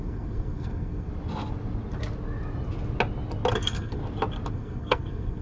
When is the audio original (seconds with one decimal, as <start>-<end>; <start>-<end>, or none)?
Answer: 1.1-3.5; 4.0-4.5